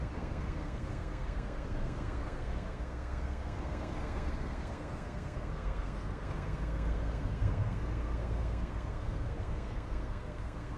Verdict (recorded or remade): remade